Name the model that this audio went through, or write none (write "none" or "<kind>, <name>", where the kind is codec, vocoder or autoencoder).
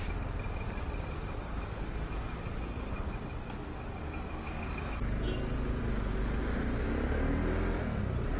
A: none